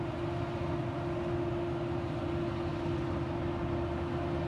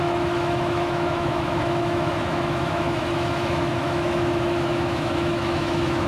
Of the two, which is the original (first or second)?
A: first